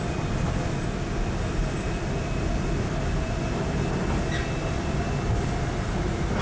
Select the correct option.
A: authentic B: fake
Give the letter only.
A